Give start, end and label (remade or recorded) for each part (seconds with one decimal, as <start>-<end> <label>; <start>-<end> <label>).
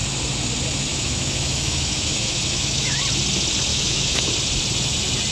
0.0-0.9 recorded; 0.9-3.0 remade; 3.0-3.7 recorded; 3.7-4.3 remade; 4.3-5.3 recorded